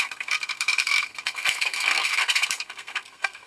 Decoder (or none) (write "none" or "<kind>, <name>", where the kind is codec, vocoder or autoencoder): codec, SNAC